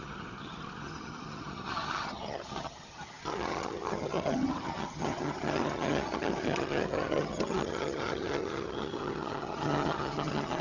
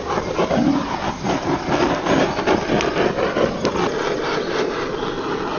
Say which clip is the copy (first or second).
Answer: first